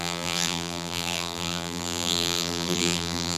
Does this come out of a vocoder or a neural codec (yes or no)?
yes